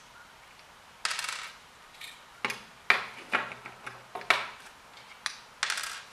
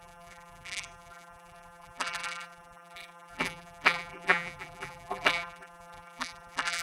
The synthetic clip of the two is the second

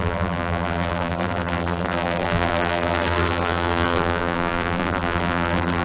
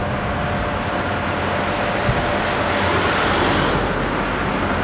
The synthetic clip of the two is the first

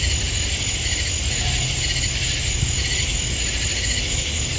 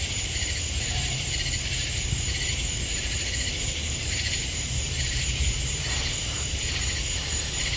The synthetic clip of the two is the second